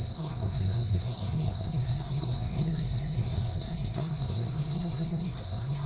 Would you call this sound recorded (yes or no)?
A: no